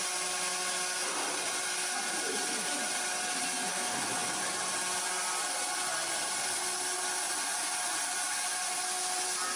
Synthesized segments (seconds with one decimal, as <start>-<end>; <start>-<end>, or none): none